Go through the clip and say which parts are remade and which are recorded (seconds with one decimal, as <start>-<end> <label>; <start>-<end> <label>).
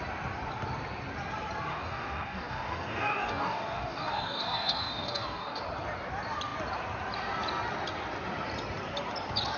0.0-1.7 recorded; 1.7-5.6 remade; 5.6-9.6 recorded